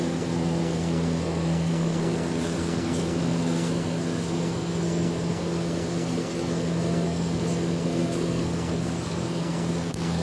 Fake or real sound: fake